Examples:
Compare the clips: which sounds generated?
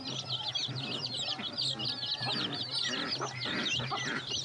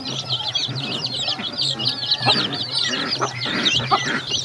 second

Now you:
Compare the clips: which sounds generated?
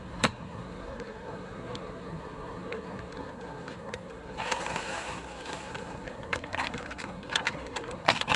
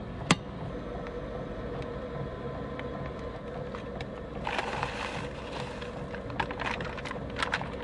first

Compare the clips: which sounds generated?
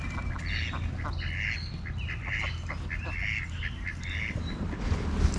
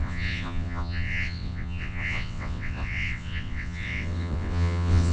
second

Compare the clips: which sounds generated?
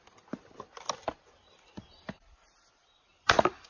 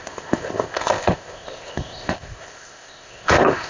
second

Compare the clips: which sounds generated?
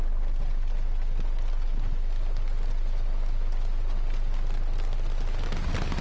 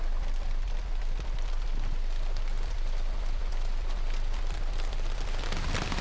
second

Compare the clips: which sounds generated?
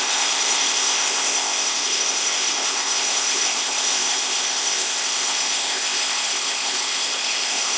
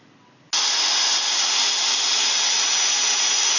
first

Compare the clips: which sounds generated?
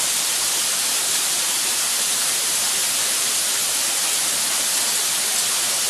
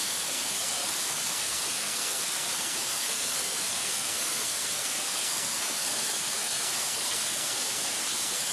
second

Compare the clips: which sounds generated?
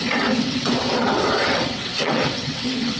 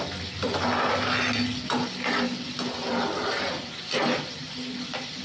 first